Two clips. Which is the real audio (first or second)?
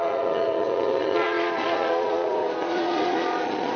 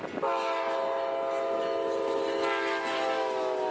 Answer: second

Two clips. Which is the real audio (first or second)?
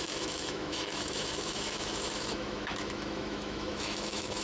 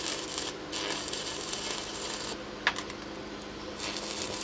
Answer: second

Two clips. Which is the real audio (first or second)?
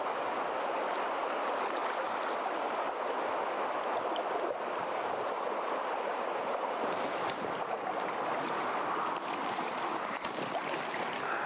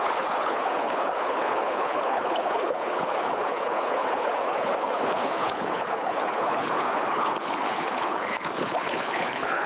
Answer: first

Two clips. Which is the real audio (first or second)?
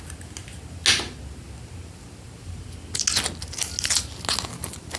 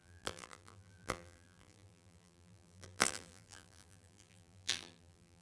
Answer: first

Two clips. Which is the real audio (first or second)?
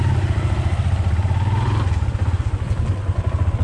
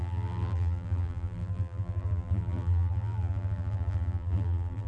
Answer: first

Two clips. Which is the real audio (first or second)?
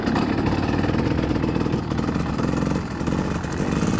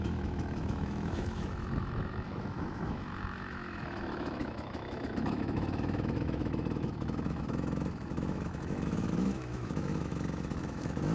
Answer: first